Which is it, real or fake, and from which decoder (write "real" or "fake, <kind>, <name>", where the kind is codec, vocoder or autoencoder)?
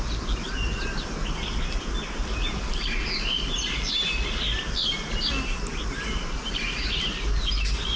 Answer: real